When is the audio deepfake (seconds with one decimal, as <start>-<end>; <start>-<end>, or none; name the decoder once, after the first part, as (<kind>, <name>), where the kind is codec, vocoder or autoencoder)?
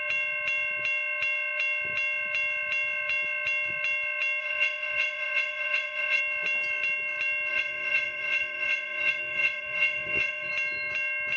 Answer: 4.4-6.2 (vocoder, WaveNeXt); 7.5-10.5